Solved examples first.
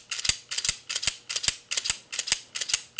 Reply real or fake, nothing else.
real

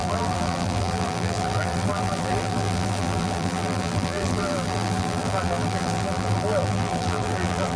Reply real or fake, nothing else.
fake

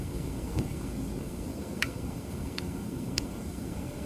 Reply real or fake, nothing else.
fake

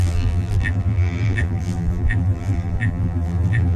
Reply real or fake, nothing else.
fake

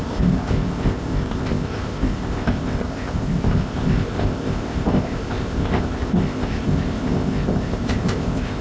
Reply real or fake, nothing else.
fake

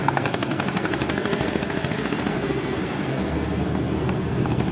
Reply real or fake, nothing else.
fake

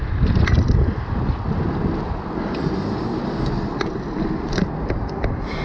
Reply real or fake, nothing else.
real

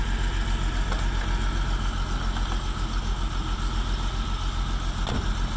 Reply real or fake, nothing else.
real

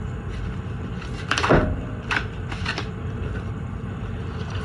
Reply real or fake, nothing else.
real